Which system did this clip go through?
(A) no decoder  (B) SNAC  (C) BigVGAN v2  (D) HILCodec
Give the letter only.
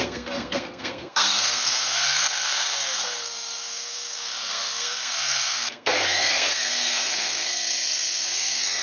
B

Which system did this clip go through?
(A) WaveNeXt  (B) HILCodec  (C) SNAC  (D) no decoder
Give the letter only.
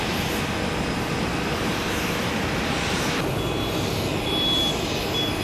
D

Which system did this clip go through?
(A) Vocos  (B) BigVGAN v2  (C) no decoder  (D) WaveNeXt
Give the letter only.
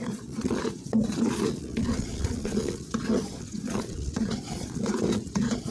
A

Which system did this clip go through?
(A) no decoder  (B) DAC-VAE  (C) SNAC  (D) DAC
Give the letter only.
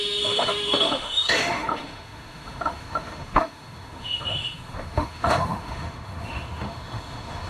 B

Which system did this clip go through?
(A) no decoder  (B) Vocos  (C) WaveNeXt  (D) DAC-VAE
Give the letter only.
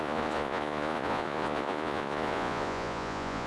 B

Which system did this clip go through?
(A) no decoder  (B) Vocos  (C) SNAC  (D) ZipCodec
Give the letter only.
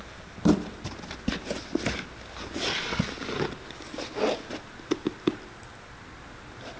A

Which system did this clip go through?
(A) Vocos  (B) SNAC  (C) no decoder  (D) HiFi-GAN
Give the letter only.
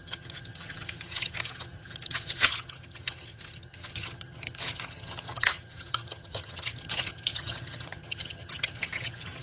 D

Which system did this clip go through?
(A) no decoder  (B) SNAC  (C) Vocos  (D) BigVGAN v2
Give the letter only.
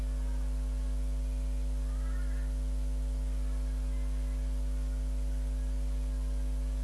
A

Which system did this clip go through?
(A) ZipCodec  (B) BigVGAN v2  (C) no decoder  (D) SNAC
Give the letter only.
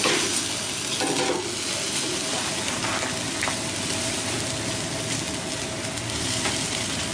C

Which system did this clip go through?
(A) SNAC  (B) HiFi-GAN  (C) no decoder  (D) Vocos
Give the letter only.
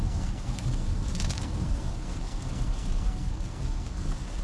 A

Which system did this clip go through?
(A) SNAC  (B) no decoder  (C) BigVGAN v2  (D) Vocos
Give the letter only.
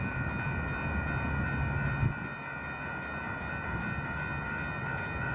B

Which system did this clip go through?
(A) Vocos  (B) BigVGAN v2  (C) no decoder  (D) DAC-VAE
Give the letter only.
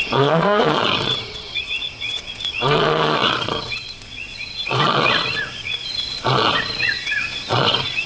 A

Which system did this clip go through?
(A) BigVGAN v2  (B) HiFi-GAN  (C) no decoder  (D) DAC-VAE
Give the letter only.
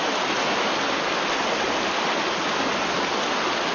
C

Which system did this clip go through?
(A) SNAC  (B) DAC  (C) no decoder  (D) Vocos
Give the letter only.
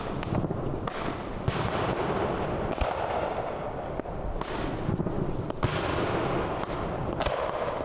C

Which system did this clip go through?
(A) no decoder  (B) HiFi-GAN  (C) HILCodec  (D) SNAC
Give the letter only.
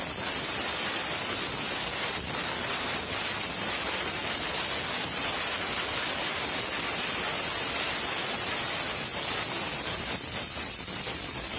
A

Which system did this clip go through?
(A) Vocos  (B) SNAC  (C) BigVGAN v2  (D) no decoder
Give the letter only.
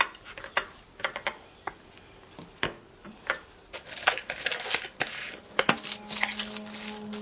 D